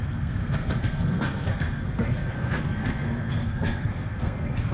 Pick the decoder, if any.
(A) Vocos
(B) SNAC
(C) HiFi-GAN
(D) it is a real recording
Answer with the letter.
B